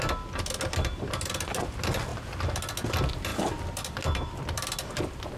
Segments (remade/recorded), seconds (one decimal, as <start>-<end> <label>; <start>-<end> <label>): 0.0-3.3 recorded; 3.3-3.8 remade; 3.8-5.4 recorded